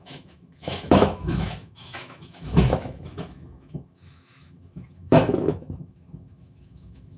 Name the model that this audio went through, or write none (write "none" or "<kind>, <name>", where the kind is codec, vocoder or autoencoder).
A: autoencoder, DAC-VAE